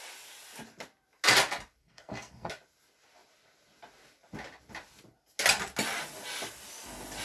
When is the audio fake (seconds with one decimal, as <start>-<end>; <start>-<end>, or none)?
1.8-2.5